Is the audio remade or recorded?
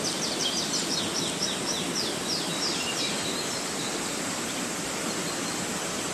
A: remade